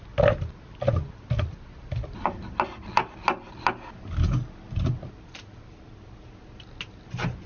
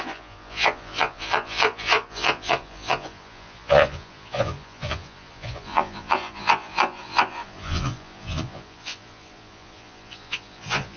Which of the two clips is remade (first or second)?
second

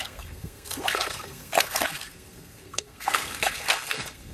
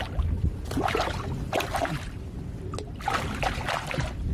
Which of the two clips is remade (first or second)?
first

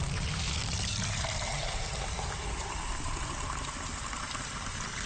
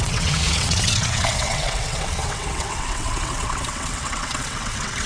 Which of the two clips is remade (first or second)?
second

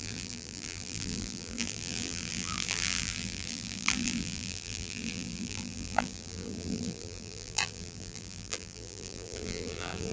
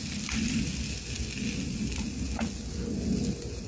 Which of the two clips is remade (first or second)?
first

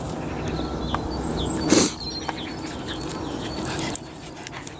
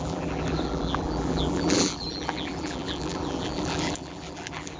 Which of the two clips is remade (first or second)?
second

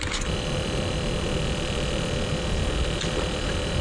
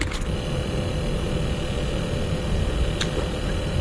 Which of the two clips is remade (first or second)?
first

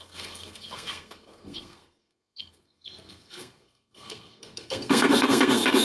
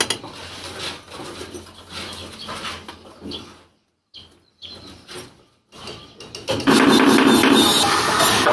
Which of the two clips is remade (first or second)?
first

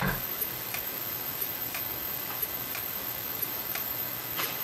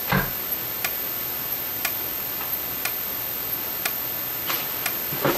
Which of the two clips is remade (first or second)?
first